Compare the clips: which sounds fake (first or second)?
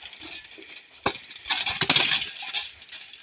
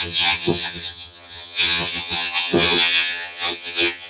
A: second